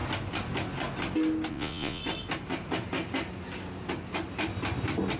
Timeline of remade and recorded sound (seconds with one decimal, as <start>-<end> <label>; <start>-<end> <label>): 0.0-1.5 recorded; 1.5-2.0 remade; 2.0-5.2 recorded